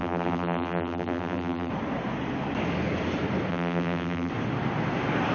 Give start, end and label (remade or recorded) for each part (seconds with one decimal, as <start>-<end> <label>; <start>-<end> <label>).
0.0-1.7 remade; 1.7-3.5 recorded; 3.5-4.3 remade; 4.3-5.3 recorded